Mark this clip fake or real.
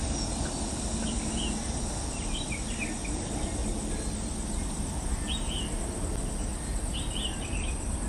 real